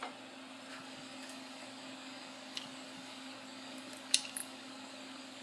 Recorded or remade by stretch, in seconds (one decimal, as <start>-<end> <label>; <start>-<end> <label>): 0.0-0.7 recorded; 0.7-5.4 remade